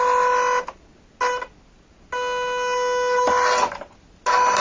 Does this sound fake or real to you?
real